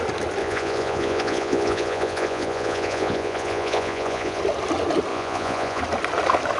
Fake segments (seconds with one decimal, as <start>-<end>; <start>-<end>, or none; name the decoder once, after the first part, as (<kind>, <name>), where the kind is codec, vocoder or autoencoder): 0.4-4.4 (vocoder, Vocos); 5.1-5.8